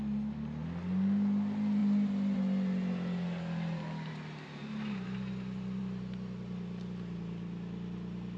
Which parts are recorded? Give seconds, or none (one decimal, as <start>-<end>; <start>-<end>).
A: 0.0-8.4